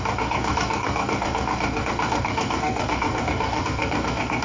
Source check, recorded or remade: remade